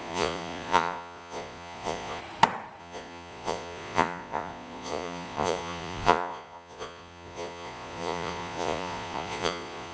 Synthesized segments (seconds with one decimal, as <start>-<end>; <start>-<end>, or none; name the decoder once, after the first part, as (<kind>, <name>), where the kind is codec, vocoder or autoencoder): 0.0-2.2 (vocoder, Vocos); 2.8-9.9